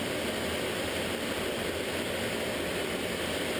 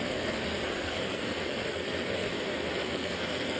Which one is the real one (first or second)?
first